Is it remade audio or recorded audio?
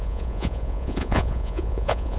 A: remade